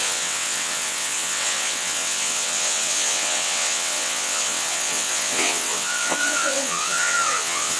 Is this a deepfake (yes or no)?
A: yes